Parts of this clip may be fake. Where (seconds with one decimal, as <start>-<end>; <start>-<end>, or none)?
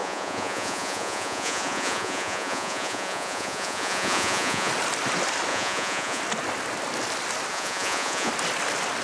0.0-4.7; 5.5-6.2; 7.5-8.3